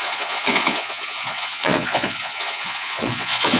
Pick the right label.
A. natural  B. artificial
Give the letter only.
B